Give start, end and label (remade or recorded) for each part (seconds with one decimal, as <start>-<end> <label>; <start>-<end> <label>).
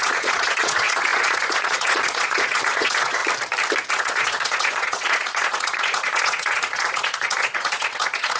0.0-3.2 remade; 3.2-3.9 recorded; 3.9-8.4 remade